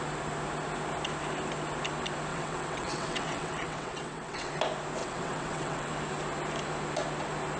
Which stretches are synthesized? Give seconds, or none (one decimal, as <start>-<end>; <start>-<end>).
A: 2.3-4.5; 5.0-5.9